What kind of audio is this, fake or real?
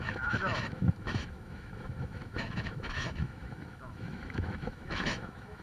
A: fake